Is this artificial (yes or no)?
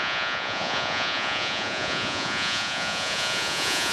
yes